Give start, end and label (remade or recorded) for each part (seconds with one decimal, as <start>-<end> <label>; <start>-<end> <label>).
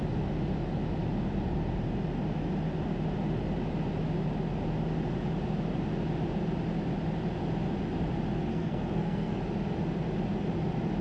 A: 0.0-8.5 recorded; 8.5-9.4 remade; 9.4-11.0 recorded